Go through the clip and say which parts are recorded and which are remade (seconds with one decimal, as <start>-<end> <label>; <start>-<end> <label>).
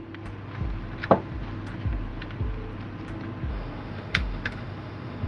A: 0.0-3.5 recorded; 3.5-5.3 remade